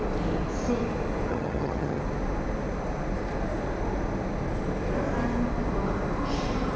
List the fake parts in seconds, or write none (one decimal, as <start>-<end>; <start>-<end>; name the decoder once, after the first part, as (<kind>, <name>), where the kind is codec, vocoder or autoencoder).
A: 1.3-2.0 (vocoder, HiFi-GAN)